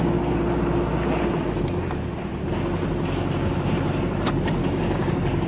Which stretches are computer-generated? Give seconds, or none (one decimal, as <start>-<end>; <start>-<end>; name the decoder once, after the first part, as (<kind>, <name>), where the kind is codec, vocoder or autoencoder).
4.6-5.5 (codec, DAC)

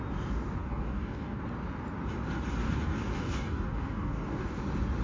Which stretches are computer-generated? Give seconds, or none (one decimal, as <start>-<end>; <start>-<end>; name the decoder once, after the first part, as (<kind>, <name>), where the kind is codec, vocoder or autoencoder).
0.6-1.4 (codec, DAC); 2.6-4.6

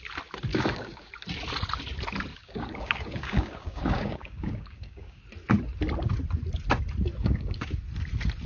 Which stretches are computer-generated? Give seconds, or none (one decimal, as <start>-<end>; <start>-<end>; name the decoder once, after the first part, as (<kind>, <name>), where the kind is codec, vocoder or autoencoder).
0.5-1.1 (codec, DAC); 2.3-5.2; 7.2-7.8